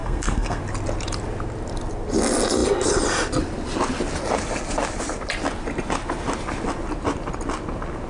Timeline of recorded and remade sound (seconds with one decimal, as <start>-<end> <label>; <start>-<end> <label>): 0.0-0.6 remade; 0.6-8.1 recorded